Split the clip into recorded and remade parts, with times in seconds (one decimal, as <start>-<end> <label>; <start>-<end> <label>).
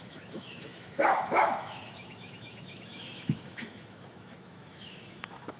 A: 0.0-5.6 remade